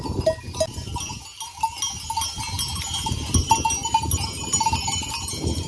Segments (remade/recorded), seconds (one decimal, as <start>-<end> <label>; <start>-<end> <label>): 0.0-5.7 recorded

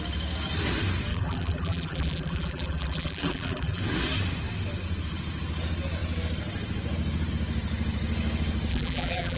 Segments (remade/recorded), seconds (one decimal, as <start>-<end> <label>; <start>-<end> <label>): 0.0-1.1 recorded; 1.1-3.8 remade; 3.8-8.7 recorded; 8.7-9.4 remade

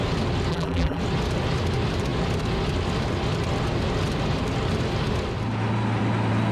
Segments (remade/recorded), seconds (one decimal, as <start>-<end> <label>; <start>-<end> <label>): 0.0-0.5 recorded; 0.5-1.0 remade; 1.0-6.5 recorded